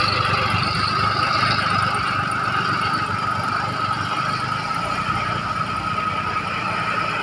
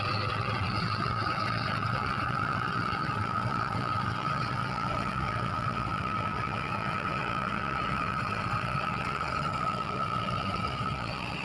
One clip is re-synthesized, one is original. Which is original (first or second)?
first